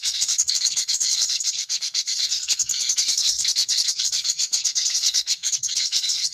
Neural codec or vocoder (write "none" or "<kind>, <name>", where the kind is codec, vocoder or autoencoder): codec, SNAC